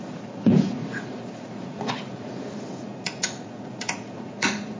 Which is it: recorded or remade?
remade